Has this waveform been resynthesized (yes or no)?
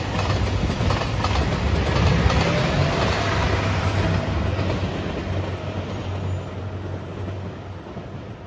no